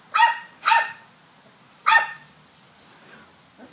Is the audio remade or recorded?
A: recorded